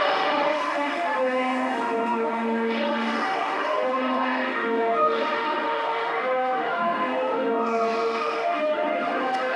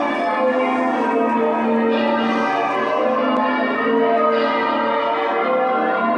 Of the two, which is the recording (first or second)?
second